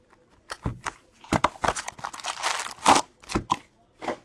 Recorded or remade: remade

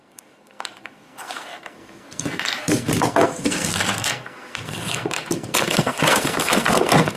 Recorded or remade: remade